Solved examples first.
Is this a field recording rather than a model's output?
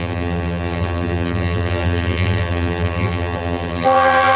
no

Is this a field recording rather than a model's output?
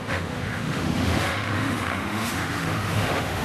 no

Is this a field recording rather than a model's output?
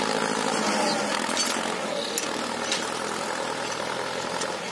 yes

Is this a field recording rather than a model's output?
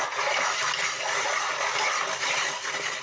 yes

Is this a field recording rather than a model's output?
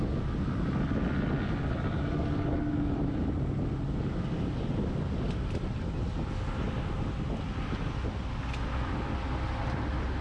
yes